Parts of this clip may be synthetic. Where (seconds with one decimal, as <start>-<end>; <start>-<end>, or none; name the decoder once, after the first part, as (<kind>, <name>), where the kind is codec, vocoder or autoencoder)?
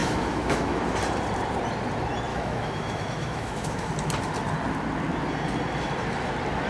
0.0-0.8 (autoencoder, DAC-VAE); 2.3-3.9